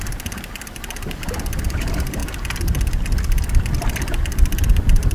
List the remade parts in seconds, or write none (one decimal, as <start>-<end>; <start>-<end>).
0.0-2.2; 3.7-5.1